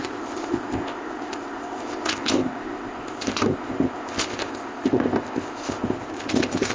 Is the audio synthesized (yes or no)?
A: yes